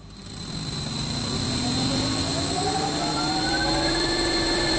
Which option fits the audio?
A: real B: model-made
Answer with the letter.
B